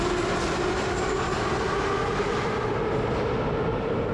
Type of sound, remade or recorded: recorded